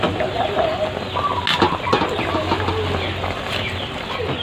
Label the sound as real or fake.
real